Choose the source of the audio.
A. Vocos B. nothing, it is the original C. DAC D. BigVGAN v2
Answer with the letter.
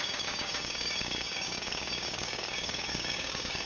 C